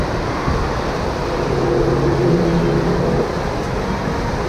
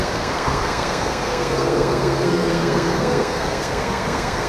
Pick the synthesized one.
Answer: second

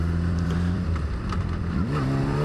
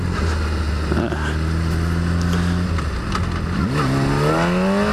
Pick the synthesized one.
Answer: first